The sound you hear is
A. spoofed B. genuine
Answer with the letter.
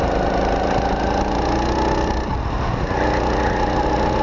B